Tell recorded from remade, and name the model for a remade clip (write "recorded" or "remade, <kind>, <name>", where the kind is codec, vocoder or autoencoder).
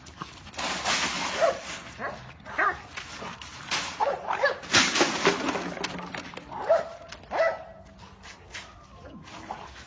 recorded